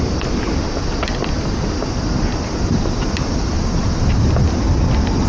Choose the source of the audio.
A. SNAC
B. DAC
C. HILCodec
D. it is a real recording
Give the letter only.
D